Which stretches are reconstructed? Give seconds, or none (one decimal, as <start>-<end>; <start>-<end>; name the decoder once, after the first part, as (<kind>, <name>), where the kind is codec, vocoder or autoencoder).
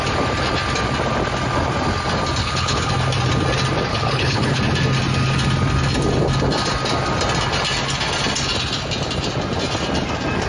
2.4-2.9 (codec, HILCodec); 3.9-4.6